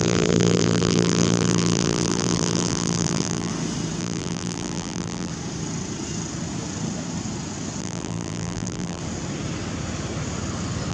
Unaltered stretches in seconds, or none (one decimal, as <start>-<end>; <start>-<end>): 3.5-4.0; 5.3-7.8; 9.0-10.9